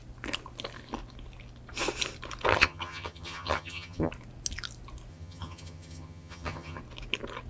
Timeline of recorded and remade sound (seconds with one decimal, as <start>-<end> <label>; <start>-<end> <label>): 0.0-2.5 recorded; 2.5-4.1 remade; 4.1-5.1 recorded; 5.1-6.8 remade; 6.8-7.5 recorded